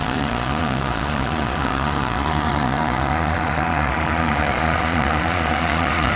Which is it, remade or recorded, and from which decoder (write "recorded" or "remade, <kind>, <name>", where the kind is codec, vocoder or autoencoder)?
remade, vocoder, Vocos